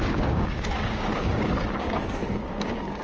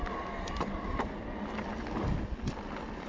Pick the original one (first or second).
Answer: second